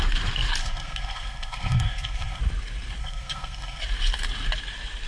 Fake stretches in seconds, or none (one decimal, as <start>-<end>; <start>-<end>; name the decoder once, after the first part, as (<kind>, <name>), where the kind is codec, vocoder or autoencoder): 0.6-2.4 (codec, SNAC); 3.0-3.8